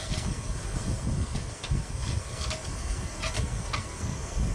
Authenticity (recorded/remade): remade